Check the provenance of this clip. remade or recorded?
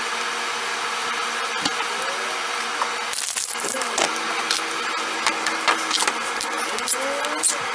recorded